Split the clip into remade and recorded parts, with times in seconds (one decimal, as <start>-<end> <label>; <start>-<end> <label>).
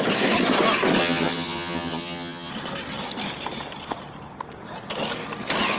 0.0-1.0 recorded; 1.0-2.5 remade; 2.5-5.8 recorded